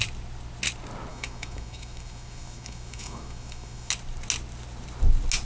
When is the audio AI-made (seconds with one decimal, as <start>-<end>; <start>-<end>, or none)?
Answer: 1.1-3.9